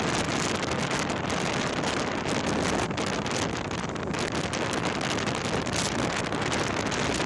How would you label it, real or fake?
real